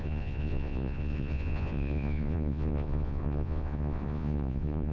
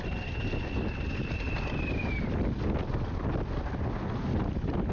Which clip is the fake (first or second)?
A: first